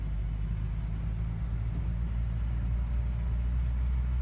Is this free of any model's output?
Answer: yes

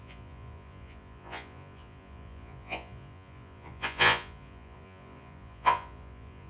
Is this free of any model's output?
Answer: no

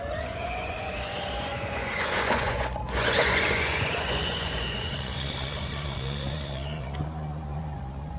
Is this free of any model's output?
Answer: no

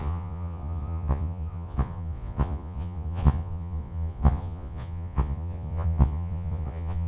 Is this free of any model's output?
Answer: no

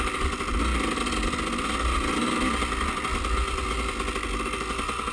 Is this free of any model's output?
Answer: yes